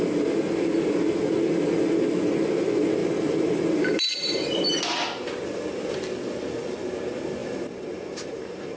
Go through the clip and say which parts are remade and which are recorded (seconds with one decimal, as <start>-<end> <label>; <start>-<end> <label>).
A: 0.0-3.0 recorded; 3.0-4.8 remade; 4.8-7.4 recorded; 7.4-8.8 remade